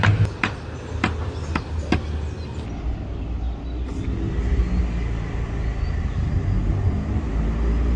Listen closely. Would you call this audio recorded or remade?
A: recorded